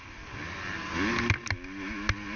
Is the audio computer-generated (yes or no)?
no